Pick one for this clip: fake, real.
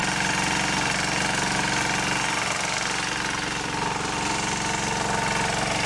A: real